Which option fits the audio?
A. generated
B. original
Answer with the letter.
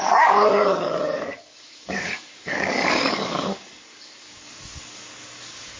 A